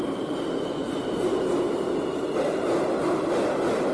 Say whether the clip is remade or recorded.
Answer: recorded